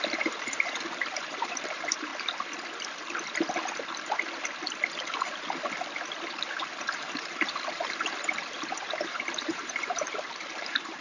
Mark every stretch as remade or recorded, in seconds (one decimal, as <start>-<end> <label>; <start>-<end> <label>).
0.0-2.1 remade; 2.1-6.5 recorded; 6.5-11.0 remade